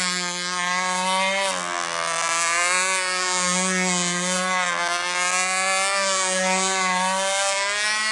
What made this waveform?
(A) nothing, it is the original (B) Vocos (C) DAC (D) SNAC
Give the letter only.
A